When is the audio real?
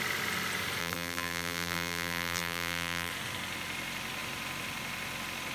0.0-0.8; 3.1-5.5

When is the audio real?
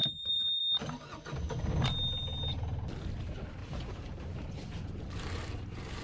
0.6-3.6; 5.0-6.0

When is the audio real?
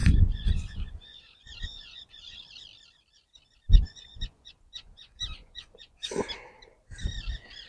2.4-3.7; 6.1-7.7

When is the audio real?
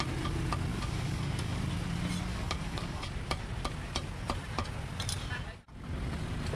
0.0-0.7; 1.6-2.3; 3.1-6.6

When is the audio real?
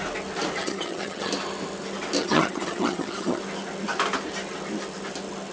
0.0-0.6; 1.3-2.2; 3.4-5.5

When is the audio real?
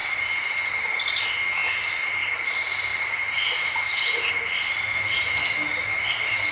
0.0-2.9; 4.3-6.5